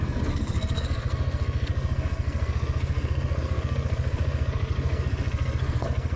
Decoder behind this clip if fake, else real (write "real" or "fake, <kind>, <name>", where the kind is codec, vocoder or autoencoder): fake, codec, SNAC